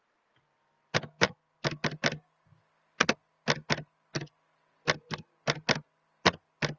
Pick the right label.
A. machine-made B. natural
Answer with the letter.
B